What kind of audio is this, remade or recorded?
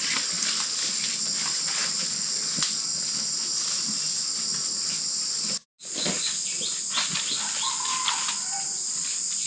recorded